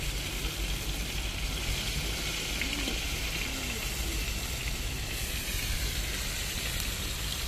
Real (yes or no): yes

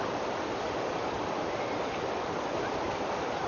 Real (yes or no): yes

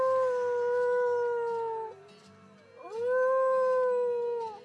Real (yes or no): yes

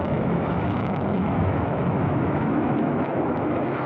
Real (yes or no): no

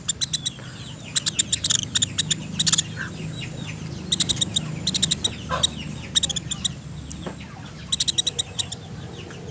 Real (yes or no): yes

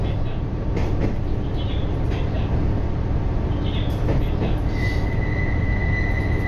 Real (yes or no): yes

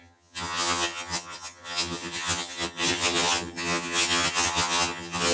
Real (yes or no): no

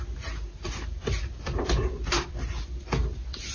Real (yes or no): yes